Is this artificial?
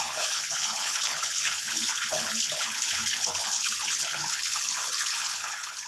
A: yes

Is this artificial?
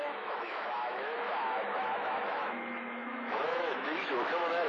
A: yes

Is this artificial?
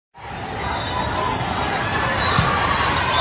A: no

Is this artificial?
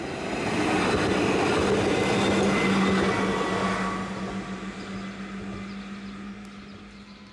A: no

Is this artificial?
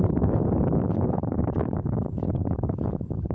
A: yes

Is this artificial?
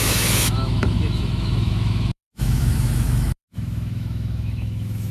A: yes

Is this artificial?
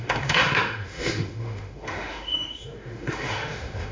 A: yes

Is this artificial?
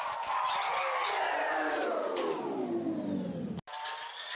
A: no